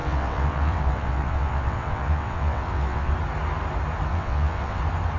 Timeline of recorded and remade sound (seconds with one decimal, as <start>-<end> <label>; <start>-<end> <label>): 0.0-3.1 remade; 3.1-4.1 recorded; 4.1-4.8 remade; 4.8-5.2 recorded